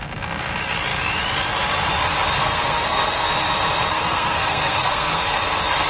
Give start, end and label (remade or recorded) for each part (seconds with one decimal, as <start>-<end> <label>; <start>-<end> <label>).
0.0-2.4 recorded; 2.4-3.3 remade; 3.3-3.9 recorded; 3.9-5.2 remade; 5.2-5.9 recorded